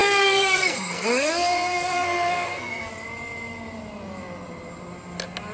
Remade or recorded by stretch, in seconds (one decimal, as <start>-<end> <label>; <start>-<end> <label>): 0.0-2.9 remade; 2.9-5.5 recorded